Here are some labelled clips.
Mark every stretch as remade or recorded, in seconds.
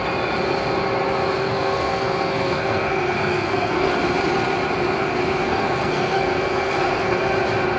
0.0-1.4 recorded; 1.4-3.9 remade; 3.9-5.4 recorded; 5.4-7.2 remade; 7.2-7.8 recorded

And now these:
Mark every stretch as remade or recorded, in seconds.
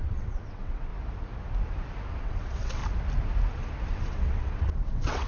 0.0-0.9 remade; 0.9-2.2 recorded; 2.2-2.8 remade; 2.8-3.9 recorded; 3.9-5.3 remade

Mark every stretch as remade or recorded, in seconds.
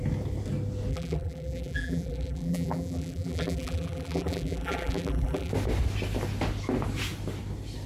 0.0-0.9 recorded; 0.9-5.5 remade; 5.5-7.9 recorded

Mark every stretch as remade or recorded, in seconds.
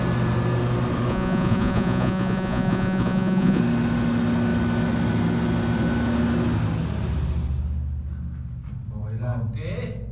0.0-1.1 recorded; 1.1-3.6 remade; 3.6-10.1 recorded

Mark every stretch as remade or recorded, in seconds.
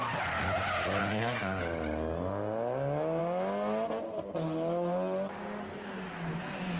0.0-1.0 recorded; 1.0-1.6 remade; 1.6-6.8 recorded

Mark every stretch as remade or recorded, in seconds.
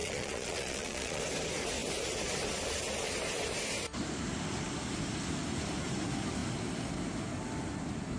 0.0-1.2 remade; 1.2-8.2 recorded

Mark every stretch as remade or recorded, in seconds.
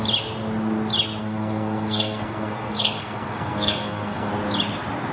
0.0-1.2 recorded; 1.2-4.3 remade; 4.3-5.1 recorded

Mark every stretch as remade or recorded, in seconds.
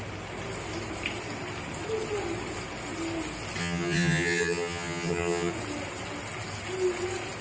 0.0-3.6 recorded; 3.6-5.5 remade; 5.5-7.4 recorded